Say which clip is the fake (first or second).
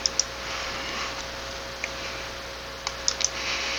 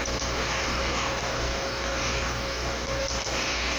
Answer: second